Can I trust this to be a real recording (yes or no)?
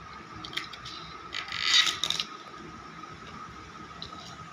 yes